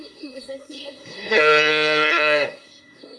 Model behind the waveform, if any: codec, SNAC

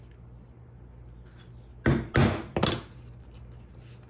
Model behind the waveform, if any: none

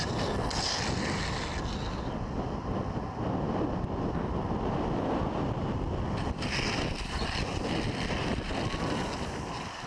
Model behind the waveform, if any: none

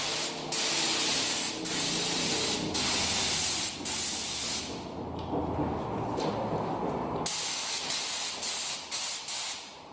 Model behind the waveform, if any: none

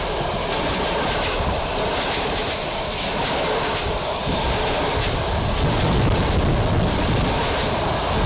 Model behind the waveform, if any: none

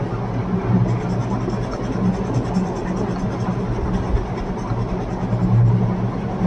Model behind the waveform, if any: none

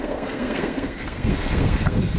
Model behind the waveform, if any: codec, SNAC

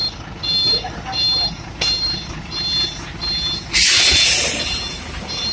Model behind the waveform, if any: none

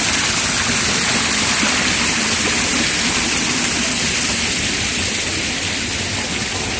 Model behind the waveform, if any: none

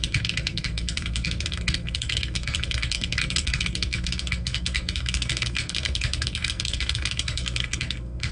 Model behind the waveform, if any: codec, SNAC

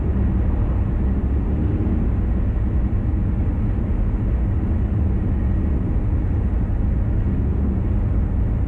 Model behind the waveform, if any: none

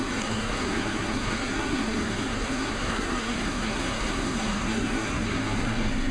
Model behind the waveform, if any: codec, SNAC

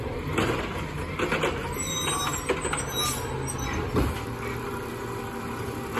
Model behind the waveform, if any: none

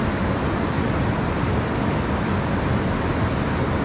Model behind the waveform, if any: none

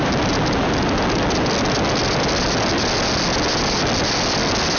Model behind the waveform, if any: none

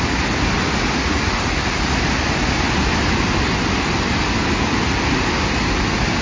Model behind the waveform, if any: none